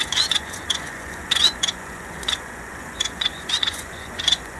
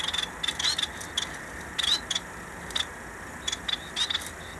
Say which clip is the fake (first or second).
first